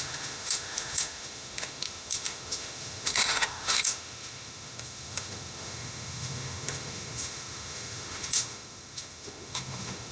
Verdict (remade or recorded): remade